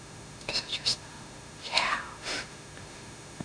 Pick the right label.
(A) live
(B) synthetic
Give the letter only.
B